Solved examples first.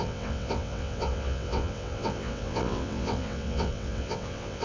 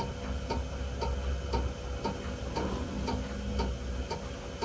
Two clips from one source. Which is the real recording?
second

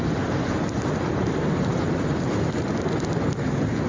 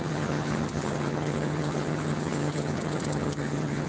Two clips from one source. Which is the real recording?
first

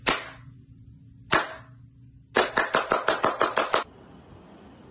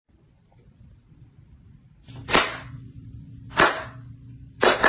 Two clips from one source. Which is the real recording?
first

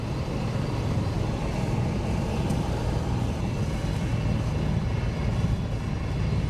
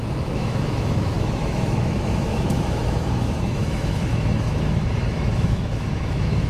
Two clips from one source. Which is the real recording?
first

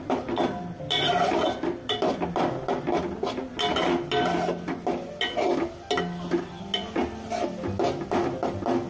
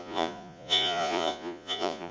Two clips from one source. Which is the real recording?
first